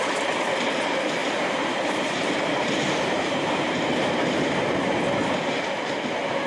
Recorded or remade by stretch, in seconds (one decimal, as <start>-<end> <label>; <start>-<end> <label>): 0.0-1.2 recorded; 1.2-5.1 remade; 5.1-6.5 recorded